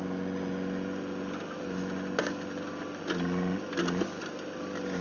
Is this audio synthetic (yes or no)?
no